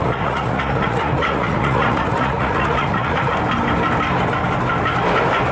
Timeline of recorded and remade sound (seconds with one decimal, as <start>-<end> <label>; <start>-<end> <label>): 0.0-3.3 remade; 3.3-5.5 recorded